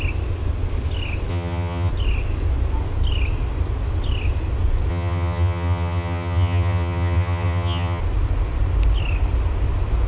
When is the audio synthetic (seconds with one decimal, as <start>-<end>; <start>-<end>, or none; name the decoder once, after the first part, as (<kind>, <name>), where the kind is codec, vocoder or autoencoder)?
1.3-1.9 (vocoder, HiFi-GAN); 4.9-8.0